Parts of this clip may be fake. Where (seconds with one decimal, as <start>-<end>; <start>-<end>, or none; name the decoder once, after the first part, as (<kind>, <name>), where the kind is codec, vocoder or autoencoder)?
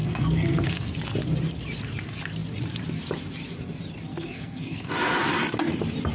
0.0-0.9 (codec, SNAC); 4.1-4.9